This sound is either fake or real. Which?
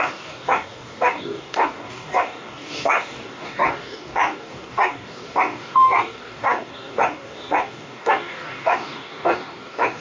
fake